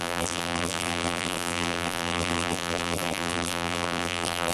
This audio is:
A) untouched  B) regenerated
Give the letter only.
B